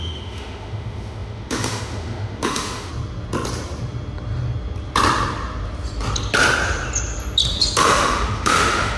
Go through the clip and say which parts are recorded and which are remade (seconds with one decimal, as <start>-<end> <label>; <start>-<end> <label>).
0.0-2.9 remade; 2.9-7.8 recorded; 7.8-9.0 remade